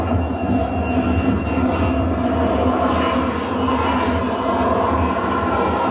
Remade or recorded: recorded